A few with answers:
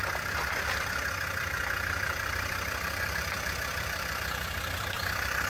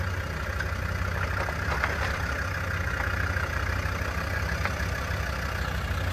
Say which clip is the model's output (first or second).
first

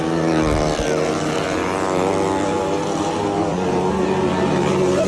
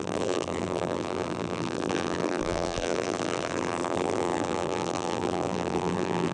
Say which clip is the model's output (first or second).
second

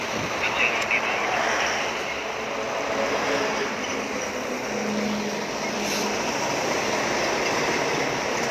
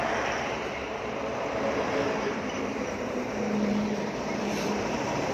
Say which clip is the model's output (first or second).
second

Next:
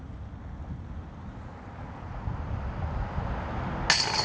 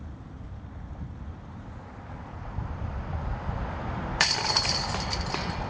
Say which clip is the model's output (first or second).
second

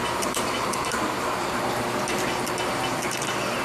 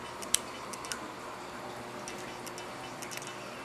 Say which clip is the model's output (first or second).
first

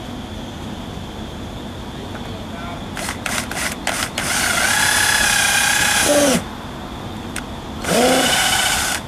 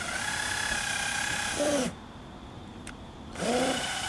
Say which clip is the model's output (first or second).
second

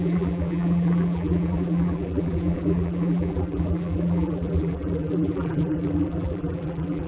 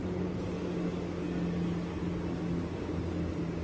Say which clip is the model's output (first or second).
first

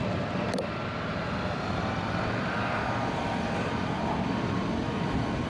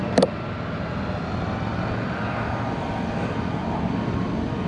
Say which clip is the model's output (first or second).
first